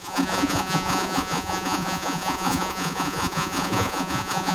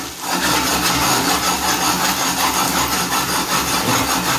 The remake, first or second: first